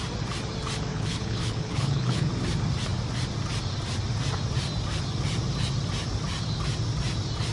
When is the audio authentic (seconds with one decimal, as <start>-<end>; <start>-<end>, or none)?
0.0-0.9; 2.3-7.5